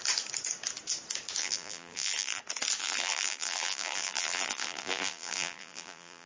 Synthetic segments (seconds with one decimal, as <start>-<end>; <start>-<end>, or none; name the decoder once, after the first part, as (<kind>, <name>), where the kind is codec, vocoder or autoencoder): 1.4-2.4 (vocoder, BigVGAN v2); 2.8-6.3

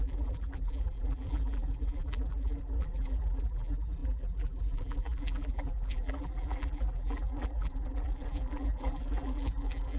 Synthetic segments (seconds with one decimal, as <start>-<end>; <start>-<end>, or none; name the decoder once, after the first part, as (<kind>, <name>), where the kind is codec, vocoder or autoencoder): 0.0-10.0 (vocoder, BigVGAN v2)

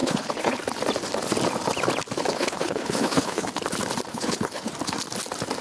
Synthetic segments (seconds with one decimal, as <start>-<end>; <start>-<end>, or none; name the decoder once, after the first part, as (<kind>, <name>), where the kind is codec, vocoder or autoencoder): 0.0-0.6 (codec, HILCodec); 2.3-3.5; 4.1-4.7

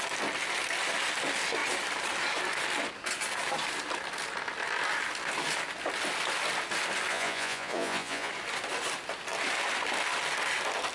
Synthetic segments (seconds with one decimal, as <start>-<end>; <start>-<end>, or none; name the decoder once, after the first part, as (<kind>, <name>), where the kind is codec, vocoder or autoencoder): 7.1-8.3 (vocoder, Vocos)

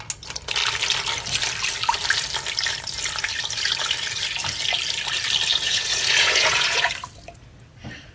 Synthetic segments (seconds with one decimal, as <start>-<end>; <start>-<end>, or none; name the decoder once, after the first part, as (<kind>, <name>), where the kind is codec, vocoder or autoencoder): 5.5-6.9 (vocoder, Vocos)

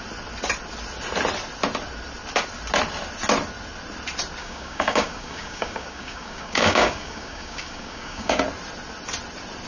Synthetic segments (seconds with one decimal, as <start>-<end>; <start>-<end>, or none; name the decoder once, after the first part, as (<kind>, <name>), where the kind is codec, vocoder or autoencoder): 4.4-8.4 (codec, DAC)